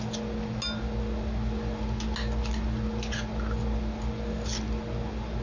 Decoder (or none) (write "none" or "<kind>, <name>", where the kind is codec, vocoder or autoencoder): none